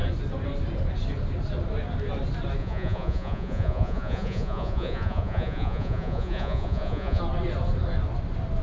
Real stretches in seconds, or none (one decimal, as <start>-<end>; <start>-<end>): 0.0-2.6; 7.2-8.6